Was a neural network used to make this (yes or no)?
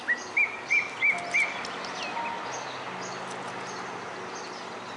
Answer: no